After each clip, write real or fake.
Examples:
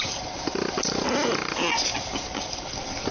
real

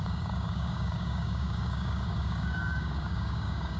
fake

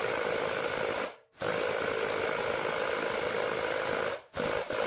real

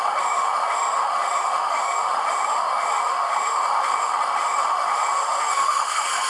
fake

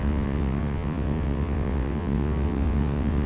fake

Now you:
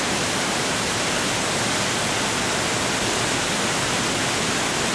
real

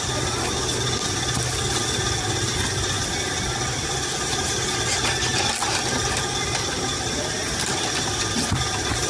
real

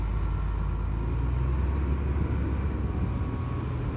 real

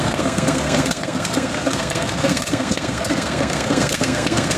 fake